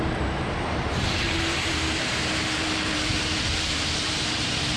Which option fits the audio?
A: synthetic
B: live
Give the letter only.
A